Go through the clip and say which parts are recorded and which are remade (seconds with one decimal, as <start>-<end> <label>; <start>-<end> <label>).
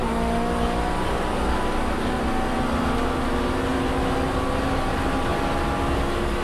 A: 0.0-6.4 recorded